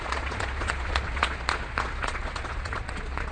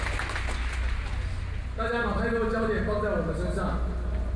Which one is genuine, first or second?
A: second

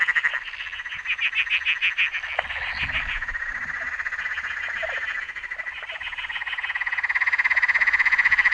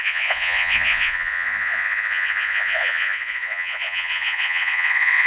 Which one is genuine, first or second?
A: first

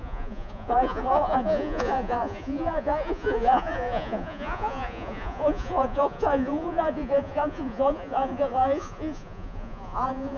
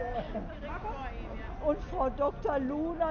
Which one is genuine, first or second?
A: second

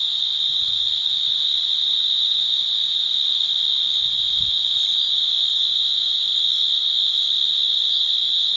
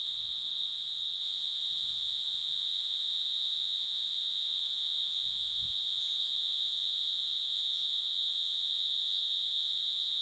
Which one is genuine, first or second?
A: first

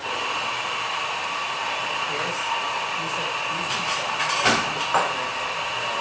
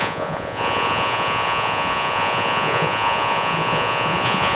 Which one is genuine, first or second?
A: first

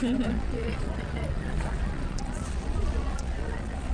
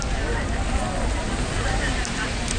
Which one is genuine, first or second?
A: second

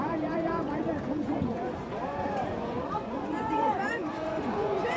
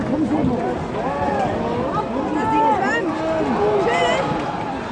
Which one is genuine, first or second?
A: second